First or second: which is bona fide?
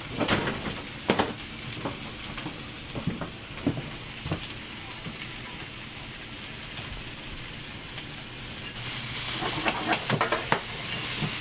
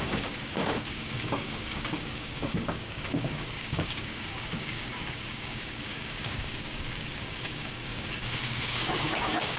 first